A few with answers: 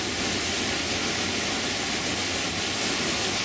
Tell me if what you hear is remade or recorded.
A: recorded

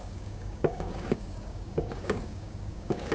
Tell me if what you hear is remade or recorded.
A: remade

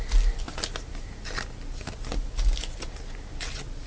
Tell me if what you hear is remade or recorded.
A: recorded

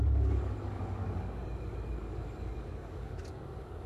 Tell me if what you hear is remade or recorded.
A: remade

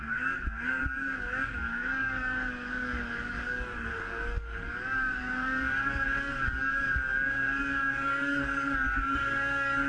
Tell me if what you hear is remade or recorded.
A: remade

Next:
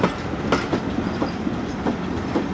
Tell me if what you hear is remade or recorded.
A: recorded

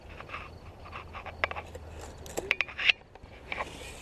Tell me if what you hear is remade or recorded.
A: recorded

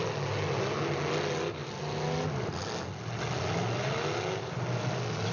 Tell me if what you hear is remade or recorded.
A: recorded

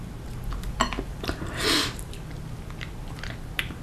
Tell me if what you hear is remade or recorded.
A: recorded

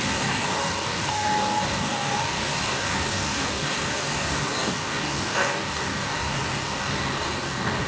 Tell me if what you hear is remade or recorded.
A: remade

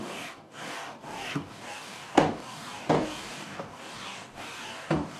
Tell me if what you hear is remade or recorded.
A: remade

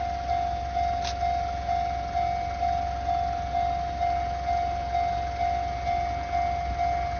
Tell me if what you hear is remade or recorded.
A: recorded